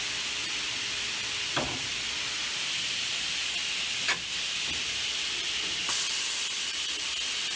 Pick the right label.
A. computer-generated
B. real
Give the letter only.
A